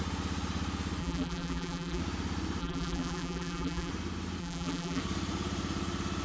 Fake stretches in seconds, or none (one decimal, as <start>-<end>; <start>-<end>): 1.0-2.0; 2.6-3.9; 4.4-5.0